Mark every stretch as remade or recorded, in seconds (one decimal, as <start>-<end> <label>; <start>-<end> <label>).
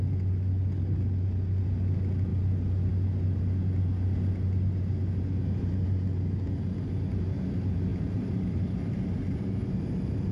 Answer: 0.0-7.9 recorded; 7.9-9.6 remade; 9.6-10.3 recorded